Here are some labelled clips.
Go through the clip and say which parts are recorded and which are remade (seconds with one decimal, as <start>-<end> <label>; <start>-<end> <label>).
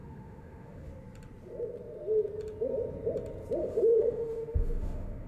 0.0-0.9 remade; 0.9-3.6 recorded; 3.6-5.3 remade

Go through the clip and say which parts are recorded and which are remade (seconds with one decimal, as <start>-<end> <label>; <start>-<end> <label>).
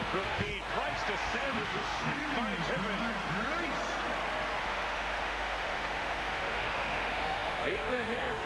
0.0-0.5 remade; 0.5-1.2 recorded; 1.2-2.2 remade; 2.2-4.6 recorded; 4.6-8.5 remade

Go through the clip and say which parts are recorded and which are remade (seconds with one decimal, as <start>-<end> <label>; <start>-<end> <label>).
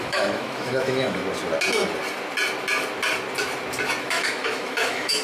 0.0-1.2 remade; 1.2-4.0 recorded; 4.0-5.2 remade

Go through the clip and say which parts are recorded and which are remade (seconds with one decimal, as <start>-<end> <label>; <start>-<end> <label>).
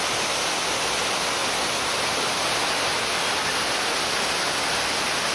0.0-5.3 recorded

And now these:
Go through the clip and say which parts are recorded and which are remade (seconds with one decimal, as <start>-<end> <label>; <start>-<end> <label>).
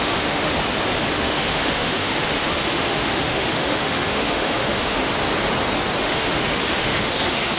0.0-0.5 remade; 0.5-1.1 recorded; 1.1-5.1 remade; 5.1-6.0 recorded; 6.0-7.6 remade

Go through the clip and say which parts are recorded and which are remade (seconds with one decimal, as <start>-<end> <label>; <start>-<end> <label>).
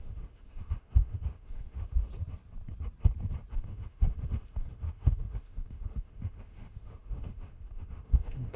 0.0-2.1 remade; 2.1-3.5 recorded; 3.5-8.6 remade